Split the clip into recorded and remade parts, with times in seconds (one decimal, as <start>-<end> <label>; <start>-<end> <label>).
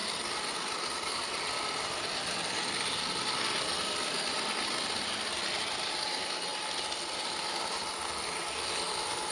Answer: 0.0-9.3 recorded